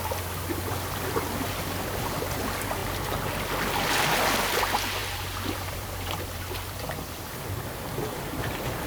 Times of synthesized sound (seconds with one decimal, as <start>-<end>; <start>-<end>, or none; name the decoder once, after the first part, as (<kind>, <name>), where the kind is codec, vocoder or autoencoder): 5.0-7.4 (vocoder, BigVGAN v2)